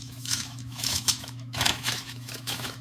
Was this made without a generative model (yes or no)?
no